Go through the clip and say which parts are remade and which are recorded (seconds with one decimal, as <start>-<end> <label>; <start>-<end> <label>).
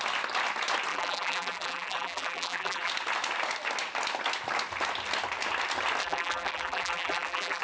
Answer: 0.0-0.9 recorded; 0.9-2.9 remade; 2.9-6.0 recorded; 6.0-7.6 remade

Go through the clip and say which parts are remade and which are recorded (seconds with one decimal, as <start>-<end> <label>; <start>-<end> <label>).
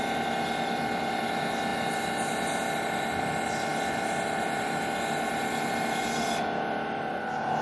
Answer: 0.0-7.6 recorded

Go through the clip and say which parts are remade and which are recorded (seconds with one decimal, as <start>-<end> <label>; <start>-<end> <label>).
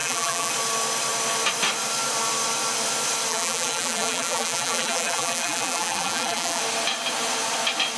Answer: 0.0-0.5 remade; 0.5-3.3 recorded; 3.3-6.6 remade; 6.6-8.0 recorded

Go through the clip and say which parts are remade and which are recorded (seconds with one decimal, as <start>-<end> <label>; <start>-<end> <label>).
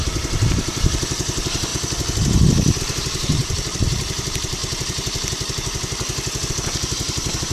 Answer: 0.0-1.7 remade; 1.7-2.8 recorded; 2.8-4.6 remade; 4.6-6.5 recorded; 6.5-7.5 remade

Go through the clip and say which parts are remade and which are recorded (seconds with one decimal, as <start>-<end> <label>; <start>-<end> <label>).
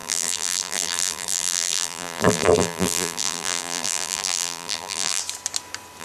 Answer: 0.0-5.2 remade; 5.2-6.0 recorded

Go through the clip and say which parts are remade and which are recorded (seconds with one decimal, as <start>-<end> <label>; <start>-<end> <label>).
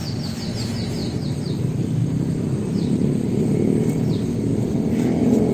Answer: 0.0-2.0 recorded; 2.0-3.5 remade; 3.5-5.5 recorded